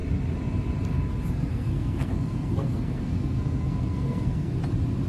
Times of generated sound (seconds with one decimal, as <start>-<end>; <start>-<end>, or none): 1.5-4.6